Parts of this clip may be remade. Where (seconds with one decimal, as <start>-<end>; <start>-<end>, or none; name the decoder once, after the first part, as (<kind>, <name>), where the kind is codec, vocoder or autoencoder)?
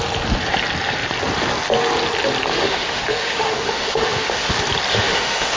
2.5-4.5 (autoencoder, DAC-VAE); 4.9-5.6